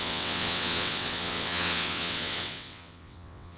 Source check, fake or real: fake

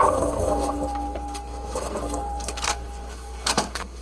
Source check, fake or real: fake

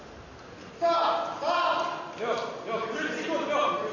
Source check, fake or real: real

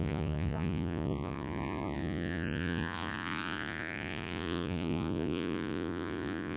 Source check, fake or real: fake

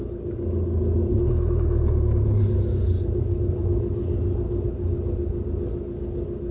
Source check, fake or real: real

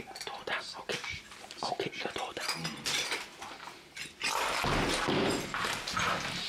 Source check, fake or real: real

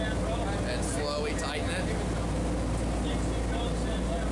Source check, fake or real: real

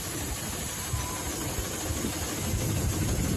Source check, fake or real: real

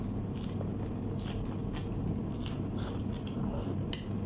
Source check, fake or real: real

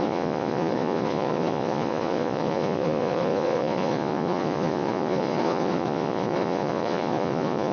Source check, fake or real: fake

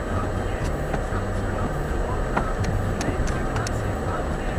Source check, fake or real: real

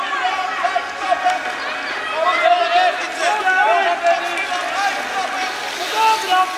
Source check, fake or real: real